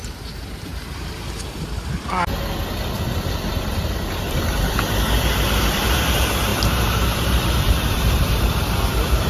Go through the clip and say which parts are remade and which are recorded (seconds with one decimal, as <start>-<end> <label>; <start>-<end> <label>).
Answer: 0.0-0.7 remade; 0.7-3.6 recorded; 3.6-9.3 remade